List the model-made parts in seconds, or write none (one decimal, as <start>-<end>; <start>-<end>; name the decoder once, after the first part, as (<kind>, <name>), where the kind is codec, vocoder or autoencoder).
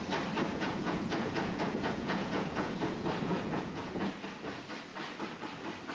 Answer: 0.5-4.0 (vocoder, Vocos)